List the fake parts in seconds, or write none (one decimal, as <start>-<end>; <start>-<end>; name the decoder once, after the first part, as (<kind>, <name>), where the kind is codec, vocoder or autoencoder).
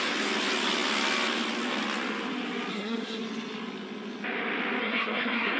2.7-3.2 (codec, SNAC); 4.8-5.6